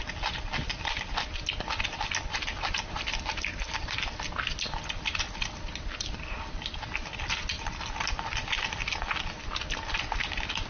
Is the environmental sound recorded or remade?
recorded